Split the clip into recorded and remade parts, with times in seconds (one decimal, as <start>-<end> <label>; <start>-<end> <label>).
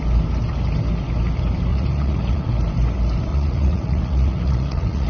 0.0-1.7 recorded; 1.7-2.5 remade; 2.5-3.3 recorded; 3.3-5.1 remade